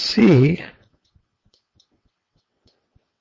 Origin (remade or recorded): remade